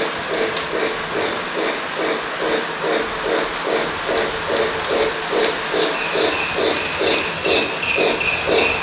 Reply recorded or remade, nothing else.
recorded